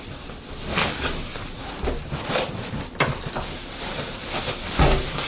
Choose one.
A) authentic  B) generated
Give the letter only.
A